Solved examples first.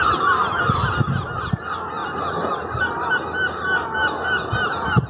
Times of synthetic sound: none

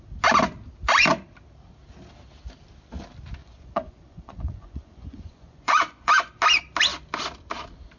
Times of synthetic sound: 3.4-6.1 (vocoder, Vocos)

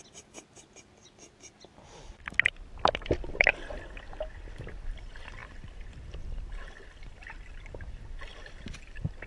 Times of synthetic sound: 5.4-7.6 (vocoder, BigVGAN v2)

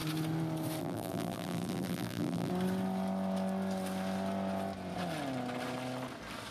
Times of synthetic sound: 0.8-2.5 (vocoder, BigVGAN v2)

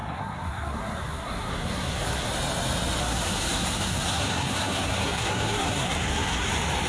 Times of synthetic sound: 0.0-2.3 (codec, SNAC); 3.0-6.5

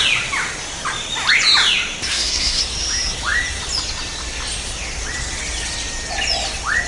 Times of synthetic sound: 2.1-2.6 (codec, SNAC)

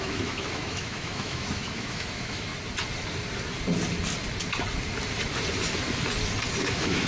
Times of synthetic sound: 0.0-2.5 (autoencoder, DAC-VAE); 6.6-7.1

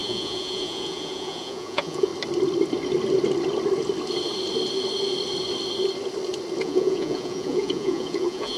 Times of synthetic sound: 0.0-2.1 (vocoder, Vocos); 6.6-8.6